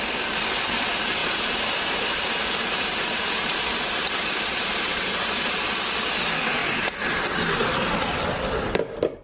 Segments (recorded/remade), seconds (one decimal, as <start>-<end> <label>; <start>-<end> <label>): 0.0-1.2 recorded; 1.2-5.7 remade; 5.7-9.2 recorded

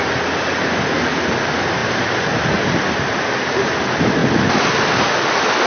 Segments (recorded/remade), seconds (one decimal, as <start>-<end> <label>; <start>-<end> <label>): 0.0-5.7 recorded

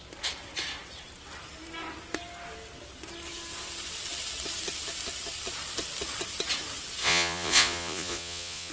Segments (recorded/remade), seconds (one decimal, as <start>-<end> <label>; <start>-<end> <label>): 0.0-7.0 recorded; 7.0-8.7 remade

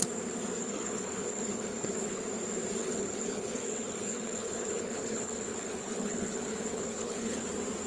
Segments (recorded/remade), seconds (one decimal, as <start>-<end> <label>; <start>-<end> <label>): 0.0-0.6 recorded; 0.6-2.2 remade; 2.2-2.8 recorded; 2.8-7.5 remade; 7.5-7.9 recorded

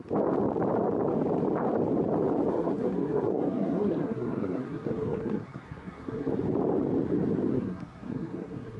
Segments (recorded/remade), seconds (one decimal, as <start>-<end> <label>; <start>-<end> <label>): 0.0-2.5 recorded; 2.5-6.3 remade; 6.3-7.5 recorded; 7.5-8.8 remade

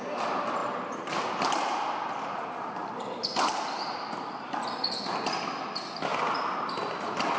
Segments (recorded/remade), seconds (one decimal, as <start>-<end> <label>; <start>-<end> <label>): 0.0-0.6 recorded; 0.6-4.9 remade; 4.9-7.4 recorded

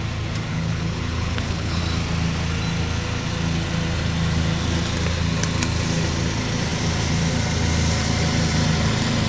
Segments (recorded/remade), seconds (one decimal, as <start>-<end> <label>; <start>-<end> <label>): 0.0-0.5 recorded; 0.5-1.8 remade; 1.8-9.3 recorded

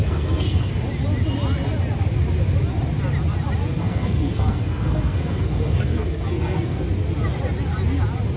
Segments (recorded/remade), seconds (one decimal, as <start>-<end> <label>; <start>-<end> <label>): 0.0-0.7 remade; 0.7-3.8 recorded; 3.8-6.8 remade; 6.8-8.4 recorded